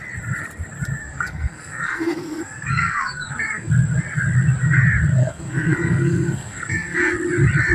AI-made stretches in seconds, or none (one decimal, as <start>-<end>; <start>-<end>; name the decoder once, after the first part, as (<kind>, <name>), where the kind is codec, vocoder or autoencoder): 1.0-3.7 (codec, SNAC); 5.2-7.1